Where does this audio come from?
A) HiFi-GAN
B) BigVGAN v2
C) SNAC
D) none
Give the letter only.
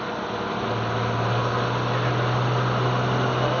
D